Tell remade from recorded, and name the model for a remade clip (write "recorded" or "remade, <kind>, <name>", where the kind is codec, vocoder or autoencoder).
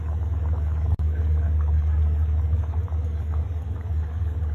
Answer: remade, codec, DAC